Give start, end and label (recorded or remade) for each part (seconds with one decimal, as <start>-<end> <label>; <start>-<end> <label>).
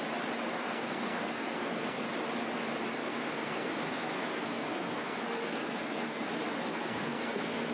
0.0-0.5 recorded; 0.5-2.0 remade; 2.0-3.0 recorded; 3.0-6.3 remade; 6.3-6.7 recorded; 6.7-7.7 remade